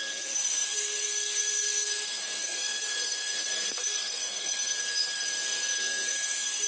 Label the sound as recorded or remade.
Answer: remade